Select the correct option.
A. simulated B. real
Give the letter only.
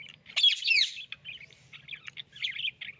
B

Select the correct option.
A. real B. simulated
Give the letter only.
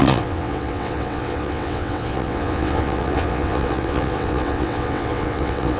B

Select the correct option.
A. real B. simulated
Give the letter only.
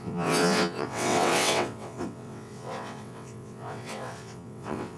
B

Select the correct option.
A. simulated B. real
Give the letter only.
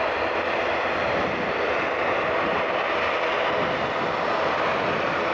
B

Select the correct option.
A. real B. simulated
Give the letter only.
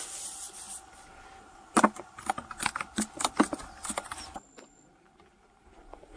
A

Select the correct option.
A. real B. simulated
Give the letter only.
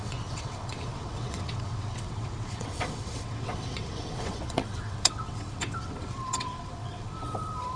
B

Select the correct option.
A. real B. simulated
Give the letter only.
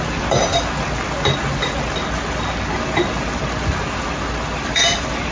A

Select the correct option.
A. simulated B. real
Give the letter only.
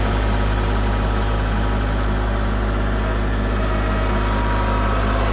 B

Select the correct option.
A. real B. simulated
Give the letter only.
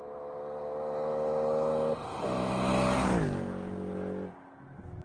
A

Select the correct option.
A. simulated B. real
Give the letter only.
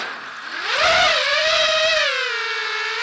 B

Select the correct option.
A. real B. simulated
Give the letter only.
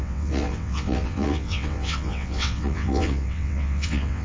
B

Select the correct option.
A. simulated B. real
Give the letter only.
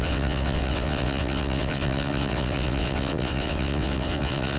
A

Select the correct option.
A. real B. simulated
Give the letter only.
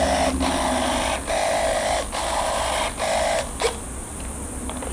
A